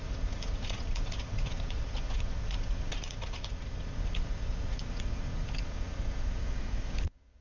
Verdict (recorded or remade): remade